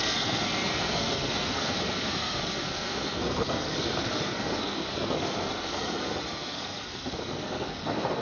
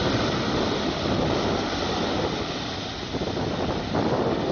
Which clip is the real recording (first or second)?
second